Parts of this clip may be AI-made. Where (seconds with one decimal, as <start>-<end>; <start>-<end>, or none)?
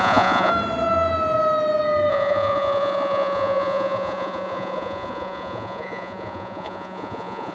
0.0-0.5; 2.1-7.5